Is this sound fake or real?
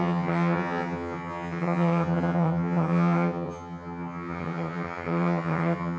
fake